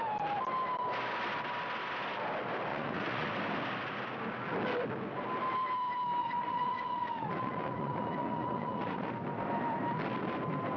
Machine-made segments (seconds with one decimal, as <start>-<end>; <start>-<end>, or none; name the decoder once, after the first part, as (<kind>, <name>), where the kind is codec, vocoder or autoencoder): 2.7-3.3 (vocoder, Vocos); 6.2-9.1